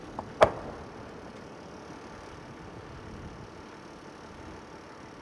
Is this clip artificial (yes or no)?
no